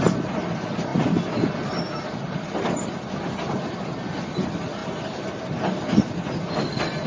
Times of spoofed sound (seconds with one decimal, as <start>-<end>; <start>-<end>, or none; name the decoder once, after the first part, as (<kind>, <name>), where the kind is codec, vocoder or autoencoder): none